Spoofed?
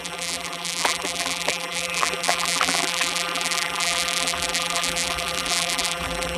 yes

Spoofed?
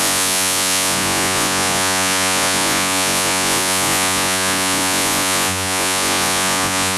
yes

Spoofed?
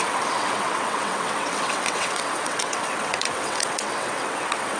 yes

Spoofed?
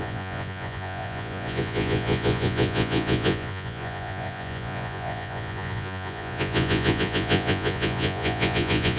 yes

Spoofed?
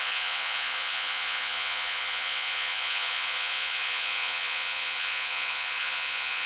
yes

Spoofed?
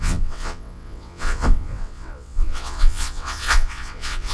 yes